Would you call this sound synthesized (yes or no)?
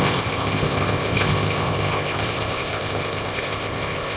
yes